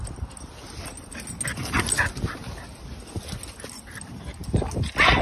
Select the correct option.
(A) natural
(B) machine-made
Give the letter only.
A